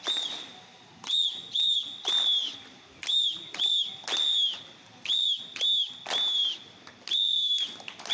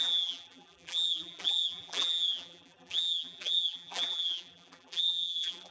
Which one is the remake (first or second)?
second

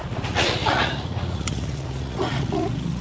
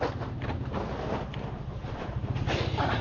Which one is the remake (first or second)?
first